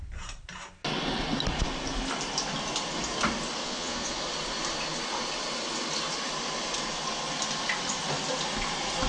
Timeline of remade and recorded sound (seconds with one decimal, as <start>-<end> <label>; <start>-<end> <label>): 0.0-3.6 recorded; 3.6-4.2 remade; 4.2-9.1 recorded